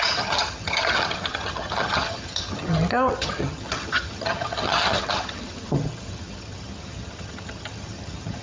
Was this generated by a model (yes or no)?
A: yes